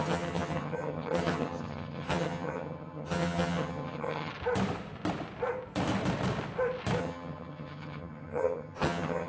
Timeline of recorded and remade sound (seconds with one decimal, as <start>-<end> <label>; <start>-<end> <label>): 0.0-4.3 remade; 4.3-7.0 recorded; 7.0-9.3 remade

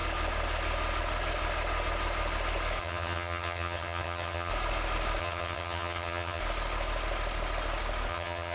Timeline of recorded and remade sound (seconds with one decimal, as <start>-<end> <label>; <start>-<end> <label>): 0.0-2.8 recorded; 2.8-4.5 remade; 4.5-5.2 recorded; 5.2-6.4 remade; 6.4-8.1 recorded; 8.1-8.5 remade

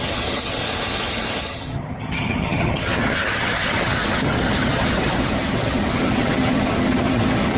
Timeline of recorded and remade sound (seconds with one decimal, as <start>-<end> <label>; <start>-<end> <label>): 0.0-0.6 remade; 0.6-1.4 recorded; 1.4-7.6 remade

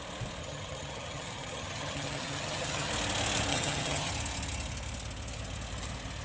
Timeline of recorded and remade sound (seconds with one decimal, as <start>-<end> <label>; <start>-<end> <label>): 0.0-0.4 recorded; 0.4-2.9 remade; 2.9-3.5 recorded; 3.5-4.1 remade; 4.1-6.2 recorded

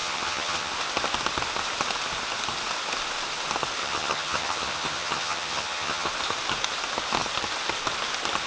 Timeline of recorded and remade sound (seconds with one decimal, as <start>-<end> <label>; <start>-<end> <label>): 0.0-0.7 remade; 0.7-3.8 recorded; 3.8-6.1 remade; 6.1-8.5 recorded